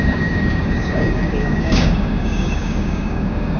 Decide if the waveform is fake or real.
fake